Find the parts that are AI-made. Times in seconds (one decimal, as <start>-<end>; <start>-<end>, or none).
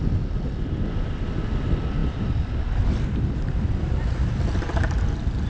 none